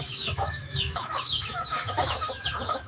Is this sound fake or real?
fake